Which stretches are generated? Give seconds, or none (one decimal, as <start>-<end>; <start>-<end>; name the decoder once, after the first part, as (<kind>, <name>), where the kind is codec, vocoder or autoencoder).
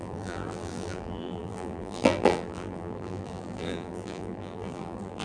0.0-5.2 (vocoder, BigVGAN v2)